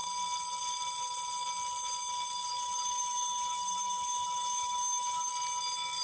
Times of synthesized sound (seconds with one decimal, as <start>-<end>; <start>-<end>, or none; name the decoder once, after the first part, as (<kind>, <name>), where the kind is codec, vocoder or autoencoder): 2.5-5.3 (autoencoder, DAC-VAE)